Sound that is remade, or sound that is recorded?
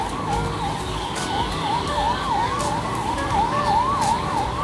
remade